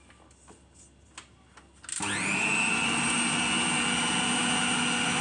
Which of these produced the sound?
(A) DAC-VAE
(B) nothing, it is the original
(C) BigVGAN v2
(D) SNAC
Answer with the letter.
B